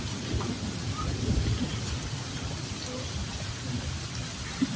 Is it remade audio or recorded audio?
recorded